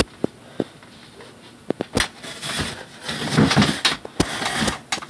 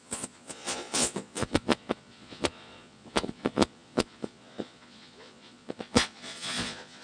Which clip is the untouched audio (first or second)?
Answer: first